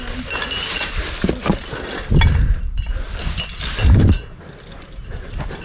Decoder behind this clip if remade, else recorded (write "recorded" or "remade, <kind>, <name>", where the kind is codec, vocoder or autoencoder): recorded